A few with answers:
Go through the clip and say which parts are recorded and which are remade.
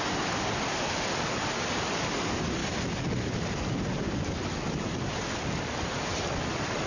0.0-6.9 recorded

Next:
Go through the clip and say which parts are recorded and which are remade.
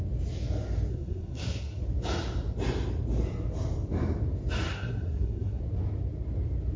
0.0-0.9 recorded; 0.9-1.8 remade; 1.8-4.6 recorded; 4.6-5.6 remade; 5.6-6.8 recorded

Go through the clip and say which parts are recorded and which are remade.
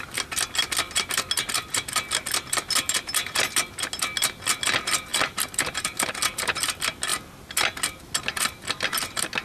0.0-5.1 recorded; 5.1-6.1 remade; 6.1-9.4 recorded